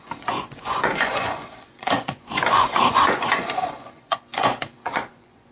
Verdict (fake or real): fake